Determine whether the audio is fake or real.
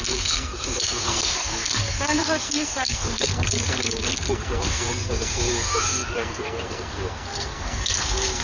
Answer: fake